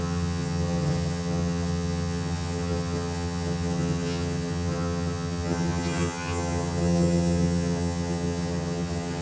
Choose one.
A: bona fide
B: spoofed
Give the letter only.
B